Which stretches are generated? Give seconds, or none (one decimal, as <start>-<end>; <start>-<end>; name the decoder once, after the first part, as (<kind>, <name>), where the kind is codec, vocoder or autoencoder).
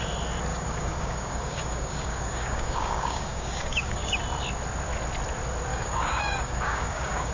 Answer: 0.5-4.2 (codec, DAC); 5.7-7.3